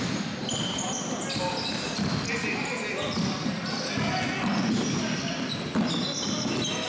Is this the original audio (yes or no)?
yes